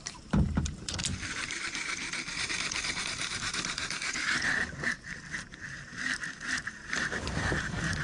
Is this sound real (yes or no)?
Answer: no